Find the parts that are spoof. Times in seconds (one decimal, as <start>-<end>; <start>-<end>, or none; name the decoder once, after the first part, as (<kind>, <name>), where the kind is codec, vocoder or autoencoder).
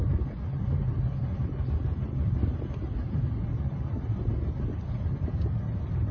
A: none